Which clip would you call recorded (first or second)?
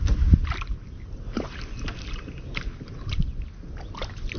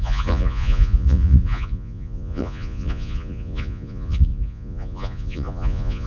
first